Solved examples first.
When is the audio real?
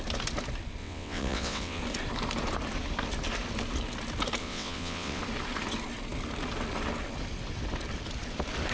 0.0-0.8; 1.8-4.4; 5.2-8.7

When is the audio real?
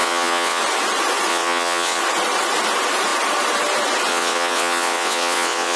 0.6-1.3; 2.0-4.1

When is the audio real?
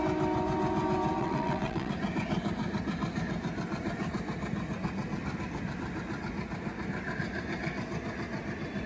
0.0-1.2; 1.9-8.9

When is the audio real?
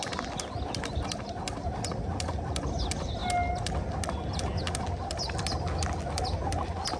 0.0-7.0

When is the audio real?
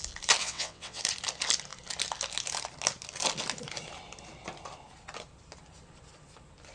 0.0-0.4; 1.0-6.7